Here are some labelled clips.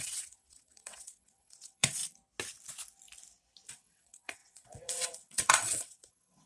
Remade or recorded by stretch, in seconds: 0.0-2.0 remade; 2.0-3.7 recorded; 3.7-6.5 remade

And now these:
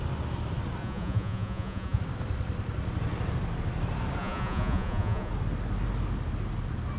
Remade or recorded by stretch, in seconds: 0.0-0.8 recorded; 0.8-2.0 remade; 2.0-4.2 recorded; 4.2-5.3 remade; 5.3-7.0 recorded

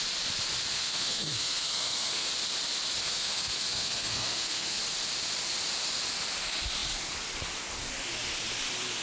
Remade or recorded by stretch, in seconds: 0.0-0.7 recorded; 0.7-2.3 remade; 2.3-3.0 recorded; 3.0-4.8 remade; 4.8-9.0 recorded

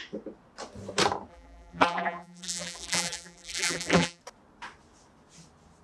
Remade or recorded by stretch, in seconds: 0.0-1.3 recorded; 1.3-4.2 remade; 4.2-5.8 recorded